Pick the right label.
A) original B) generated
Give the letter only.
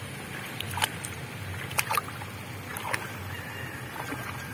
A